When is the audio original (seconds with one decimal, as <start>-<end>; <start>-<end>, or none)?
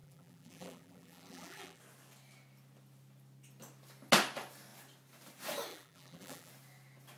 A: 1.8-5.7; 6.5-7.2